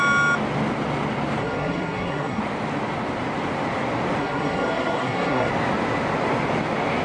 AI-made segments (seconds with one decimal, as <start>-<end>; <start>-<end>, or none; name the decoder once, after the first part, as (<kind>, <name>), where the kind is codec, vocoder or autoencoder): 1.4-2.4 (codec, SNAC); 4.2-5.5